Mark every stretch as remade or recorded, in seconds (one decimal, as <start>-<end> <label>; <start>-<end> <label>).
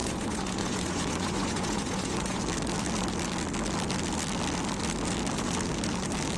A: 0.0-2.4 remade; 2.4-6.4 recorded